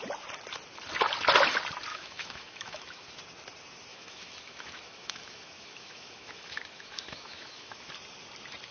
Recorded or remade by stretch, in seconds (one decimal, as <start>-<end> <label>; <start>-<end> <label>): 0.0-1.9 recorded; 1.9-3.1 remade; 3.1-3.9 recorded; 3.9-7.9 remade; 7.9-8.7 recorded